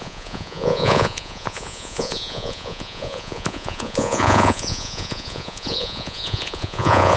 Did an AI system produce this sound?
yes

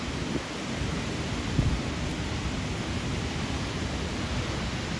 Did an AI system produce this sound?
no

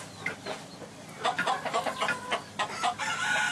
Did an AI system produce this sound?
no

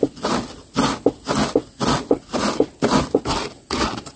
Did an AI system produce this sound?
no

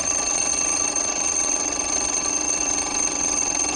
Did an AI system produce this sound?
yes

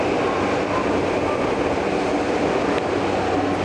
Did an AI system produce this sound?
no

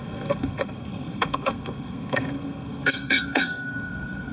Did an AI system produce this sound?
yes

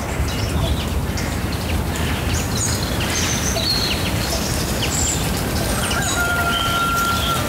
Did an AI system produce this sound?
no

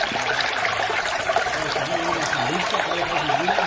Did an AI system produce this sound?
no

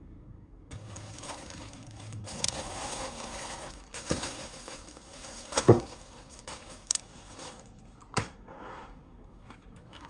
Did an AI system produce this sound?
yes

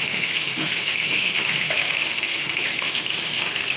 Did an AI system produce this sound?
yes